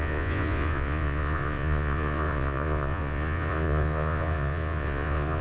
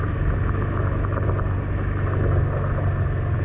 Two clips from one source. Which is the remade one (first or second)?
first